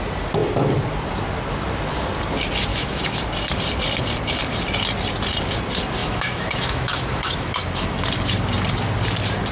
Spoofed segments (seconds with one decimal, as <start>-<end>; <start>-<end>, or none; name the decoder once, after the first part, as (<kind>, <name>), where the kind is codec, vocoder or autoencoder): 2.7-3.2 (autoencoder, DAC-VAE); 6.0-7.6